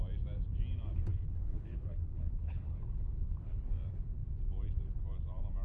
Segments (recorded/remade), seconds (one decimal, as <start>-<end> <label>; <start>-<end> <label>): 0.0-1.1 recorded; 1.1-3.7 remade; 3.7-5.6 recorded